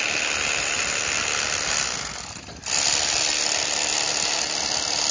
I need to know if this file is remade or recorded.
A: recorded